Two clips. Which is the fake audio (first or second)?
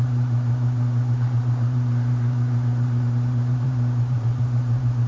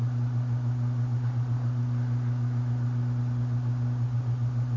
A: first